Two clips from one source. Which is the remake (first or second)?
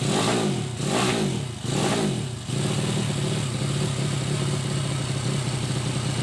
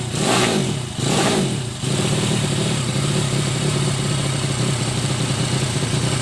second